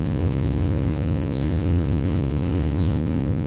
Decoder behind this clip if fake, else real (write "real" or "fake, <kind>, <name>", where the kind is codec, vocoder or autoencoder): fake, vocoder, Vocos